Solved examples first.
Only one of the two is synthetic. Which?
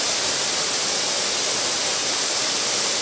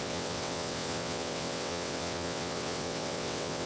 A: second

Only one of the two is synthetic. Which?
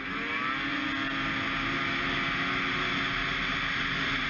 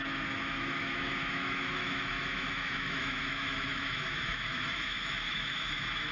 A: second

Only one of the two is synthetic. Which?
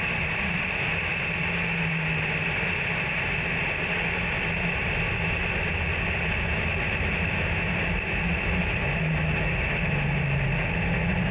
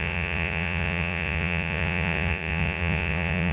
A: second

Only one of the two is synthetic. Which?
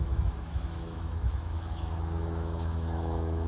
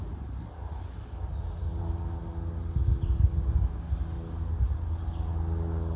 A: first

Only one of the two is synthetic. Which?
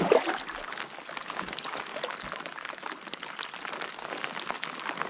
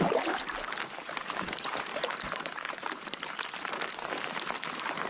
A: second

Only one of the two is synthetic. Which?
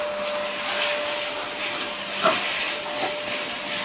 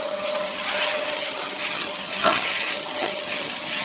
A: second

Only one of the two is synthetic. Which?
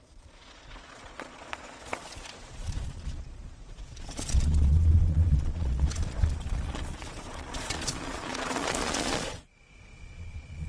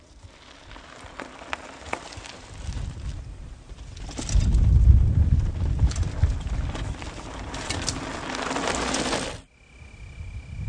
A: first